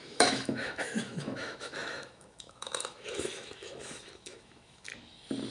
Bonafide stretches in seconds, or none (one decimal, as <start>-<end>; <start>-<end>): 4.9-5.5